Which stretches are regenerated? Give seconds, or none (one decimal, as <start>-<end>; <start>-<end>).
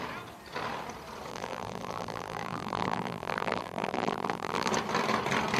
1.3-4.7